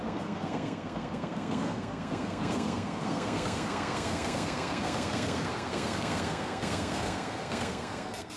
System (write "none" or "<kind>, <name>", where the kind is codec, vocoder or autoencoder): codec, SNAC